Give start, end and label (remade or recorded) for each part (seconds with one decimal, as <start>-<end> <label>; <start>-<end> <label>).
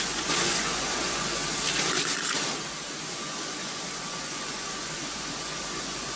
0.0-1.4 remade; 1.4-3.0 recorded; 3.0-6.2 remade